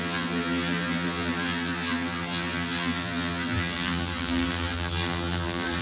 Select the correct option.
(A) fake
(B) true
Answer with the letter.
A